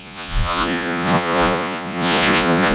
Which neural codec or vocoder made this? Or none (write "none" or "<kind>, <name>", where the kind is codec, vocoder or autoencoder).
vocoder, Vocos